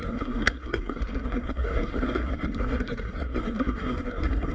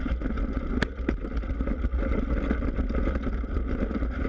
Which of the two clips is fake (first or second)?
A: first